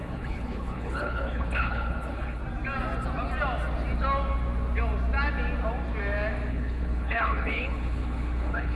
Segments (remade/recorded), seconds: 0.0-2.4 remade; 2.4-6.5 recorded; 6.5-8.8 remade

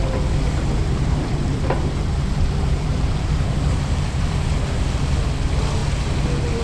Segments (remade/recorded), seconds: 0.0-0.8 recorded; 0.8-4.6 remade; 4.6-6.6 recorded

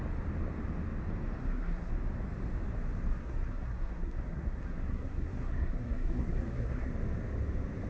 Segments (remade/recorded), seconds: 0.0-1.4 recorded; 1.4-1.9 remade; 1.9-3.1 recorded; 3.1-6.9 remade; 6.9-7.9 recorded